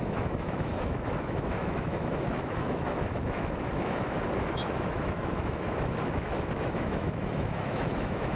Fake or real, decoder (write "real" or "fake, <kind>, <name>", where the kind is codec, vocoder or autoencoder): fake, autoencoder, DAC-VAE